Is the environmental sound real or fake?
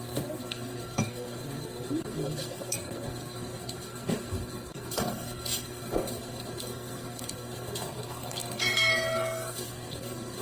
fake